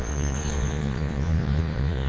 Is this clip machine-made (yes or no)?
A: yes